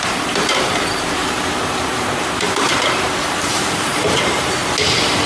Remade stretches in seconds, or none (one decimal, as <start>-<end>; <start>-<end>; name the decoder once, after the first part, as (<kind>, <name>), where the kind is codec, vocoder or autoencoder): 0.0-4.6 (vocoder, BigVGAN v2)